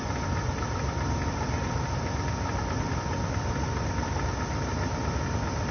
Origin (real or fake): real